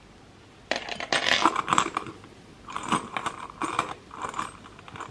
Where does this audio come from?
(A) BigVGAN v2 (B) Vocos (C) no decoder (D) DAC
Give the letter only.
C